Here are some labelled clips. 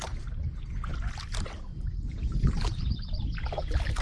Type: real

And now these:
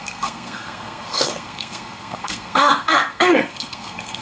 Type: fake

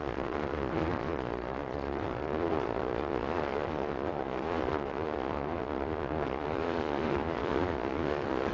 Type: fake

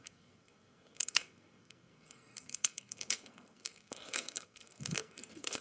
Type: fake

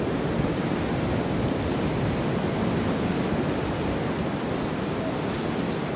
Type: real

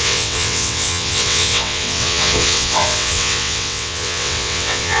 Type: fake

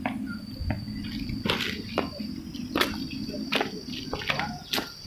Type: real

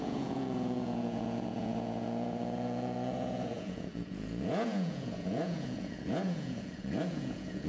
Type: fake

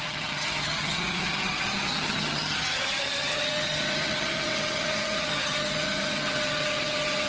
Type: fake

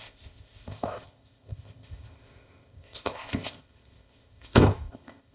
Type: fake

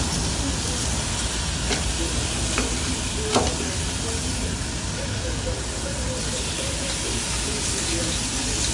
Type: real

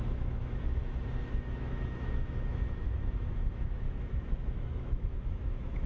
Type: fake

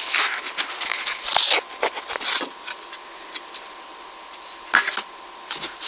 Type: real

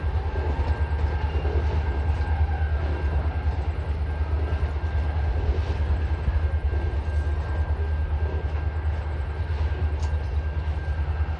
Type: real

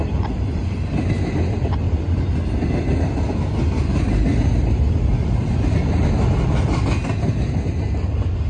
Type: real